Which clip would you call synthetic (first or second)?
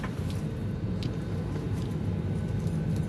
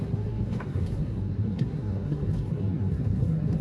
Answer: second